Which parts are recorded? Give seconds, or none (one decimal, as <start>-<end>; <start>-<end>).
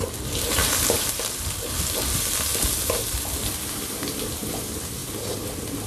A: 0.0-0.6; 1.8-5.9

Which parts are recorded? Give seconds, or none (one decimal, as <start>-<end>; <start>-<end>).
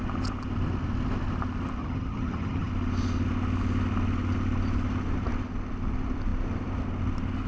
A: 0.0-1.8; 2.7-7.5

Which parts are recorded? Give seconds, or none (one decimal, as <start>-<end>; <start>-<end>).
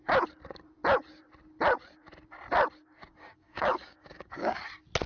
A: 0.0-3.1; 4.6-5.1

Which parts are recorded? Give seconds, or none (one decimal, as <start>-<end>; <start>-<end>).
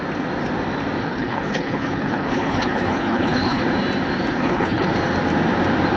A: 0.0-1.0; 3.6-4.3; 4.9-6.0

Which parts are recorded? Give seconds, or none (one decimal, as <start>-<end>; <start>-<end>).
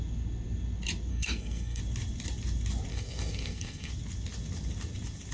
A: 0.0-1.1; 1.8-2.9; 3.9-5.3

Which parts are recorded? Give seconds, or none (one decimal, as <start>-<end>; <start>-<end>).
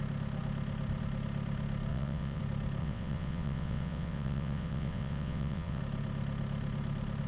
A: 0.0-1.9; 2.4-2.8; 5.8-7.3